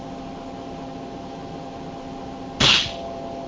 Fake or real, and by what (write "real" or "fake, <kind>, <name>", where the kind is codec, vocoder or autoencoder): real